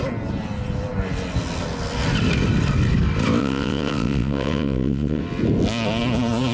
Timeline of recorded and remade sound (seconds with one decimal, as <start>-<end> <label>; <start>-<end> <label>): 0.0-3.4 recorded; 3.4-5.2 remade; 5.2-6.5 recorded